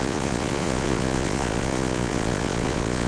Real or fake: fake